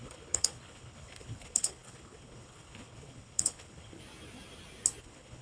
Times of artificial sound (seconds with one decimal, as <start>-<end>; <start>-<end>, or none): 0.0-4.0; 5.0-5.4